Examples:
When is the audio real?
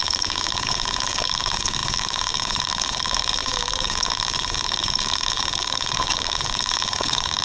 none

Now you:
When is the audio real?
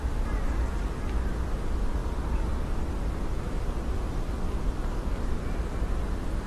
0.0-6.5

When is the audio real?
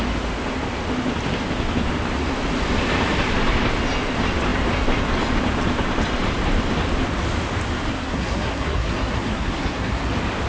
0.0-7.9; 10.0-10.5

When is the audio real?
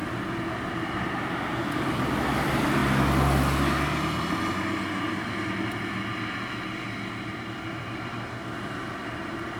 0.0-0.7; 2.8-7.3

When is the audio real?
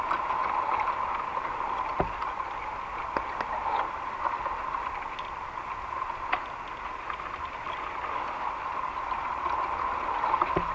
0.0-10.7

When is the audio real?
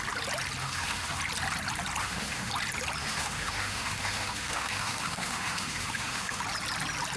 0.0-0.6; 1.2-2.0; 2.5-3.0; 6.4-7.2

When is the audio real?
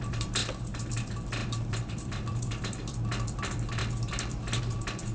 3.8-4.6